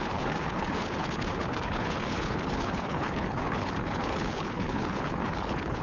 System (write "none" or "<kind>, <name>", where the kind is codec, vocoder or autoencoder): codec, HILCodec